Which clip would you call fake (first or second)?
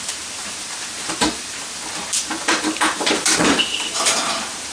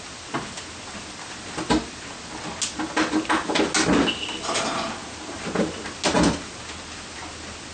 first